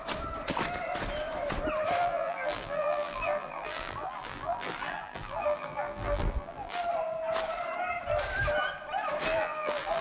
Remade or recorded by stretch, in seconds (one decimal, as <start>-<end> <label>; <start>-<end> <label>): 0.0-2.0 recorded; 2.0-6.8 remade; 6.8-9.3 recorded; 9.3-10.0 remade